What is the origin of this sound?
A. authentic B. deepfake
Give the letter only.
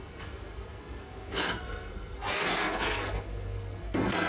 B